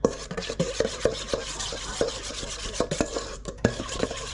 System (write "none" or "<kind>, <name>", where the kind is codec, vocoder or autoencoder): vocoder, BigVGAN v2